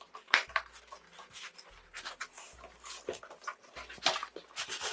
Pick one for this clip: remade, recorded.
recorded